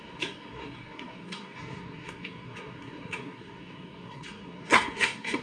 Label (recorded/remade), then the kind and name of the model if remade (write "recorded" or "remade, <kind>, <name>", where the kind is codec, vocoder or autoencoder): remade, codec, SNAC